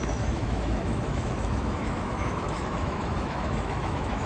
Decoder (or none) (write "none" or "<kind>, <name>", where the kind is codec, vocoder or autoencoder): autoencoder, DAC-VAE